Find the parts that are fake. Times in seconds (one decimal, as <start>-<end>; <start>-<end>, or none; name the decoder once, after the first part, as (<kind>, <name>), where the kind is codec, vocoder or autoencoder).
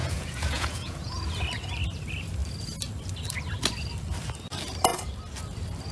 0.0-1.2 (vocoder, Vocos)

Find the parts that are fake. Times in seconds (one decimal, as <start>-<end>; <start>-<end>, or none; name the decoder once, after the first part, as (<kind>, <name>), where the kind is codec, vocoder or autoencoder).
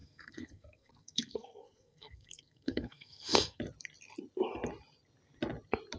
0.0-3.6 (codec, SNAC)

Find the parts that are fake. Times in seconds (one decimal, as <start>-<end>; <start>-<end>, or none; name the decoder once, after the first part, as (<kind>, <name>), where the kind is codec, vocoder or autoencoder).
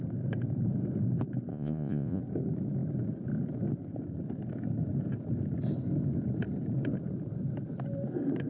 1.5-2.2 (vocoder, Vocos)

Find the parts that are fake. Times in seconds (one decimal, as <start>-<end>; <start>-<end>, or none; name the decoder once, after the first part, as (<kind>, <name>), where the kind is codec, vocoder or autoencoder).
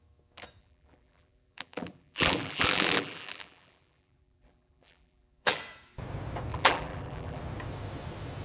0.6-5.6 (vocoder, BigVGAN v2); 6.5-7.4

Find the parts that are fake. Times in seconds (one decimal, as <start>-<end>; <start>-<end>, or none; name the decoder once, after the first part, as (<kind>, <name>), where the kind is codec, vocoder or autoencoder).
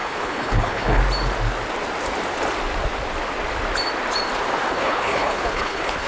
0.0-1.0 (codec, HILCodec); 4.7-6.1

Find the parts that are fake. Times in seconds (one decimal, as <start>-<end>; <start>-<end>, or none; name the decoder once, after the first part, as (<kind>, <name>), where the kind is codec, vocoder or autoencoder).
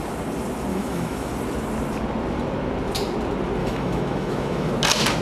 0.7-1.3 (autoencoder, DAC-VAE); 3.6-4.7